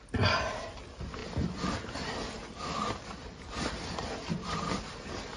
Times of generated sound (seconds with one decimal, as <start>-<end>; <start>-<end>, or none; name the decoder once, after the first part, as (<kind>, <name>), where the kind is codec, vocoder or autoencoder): none

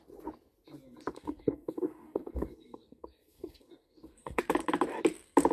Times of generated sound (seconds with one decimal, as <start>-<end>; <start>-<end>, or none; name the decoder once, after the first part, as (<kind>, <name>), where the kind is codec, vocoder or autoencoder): 1.1-4.4 (codec, SNAC)

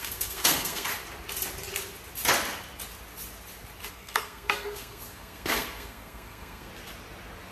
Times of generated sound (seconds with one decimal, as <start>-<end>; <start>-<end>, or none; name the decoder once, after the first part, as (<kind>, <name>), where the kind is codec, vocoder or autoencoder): 0.0-0.9 (codec, SNAC); 3.9-6.7

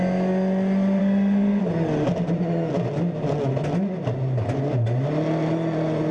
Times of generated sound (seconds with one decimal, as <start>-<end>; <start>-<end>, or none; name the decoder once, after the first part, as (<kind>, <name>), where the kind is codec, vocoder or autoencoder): 1.0-1.6 (codec, SNAC)

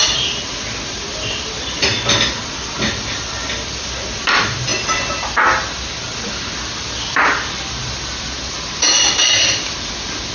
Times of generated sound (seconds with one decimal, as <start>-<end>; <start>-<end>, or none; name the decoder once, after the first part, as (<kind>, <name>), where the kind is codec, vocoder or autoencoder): none

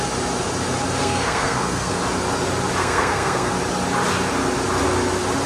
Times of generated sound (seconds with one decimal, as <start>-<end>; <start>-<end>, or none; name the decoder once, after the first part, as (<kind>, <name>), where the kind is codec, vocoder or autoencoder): 1.0-2.0 (codec, SNAC); 2.8-3.5